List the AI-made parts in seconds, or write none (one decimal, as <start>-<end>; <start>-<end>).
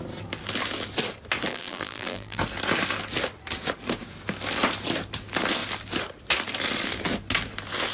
1.5-2.4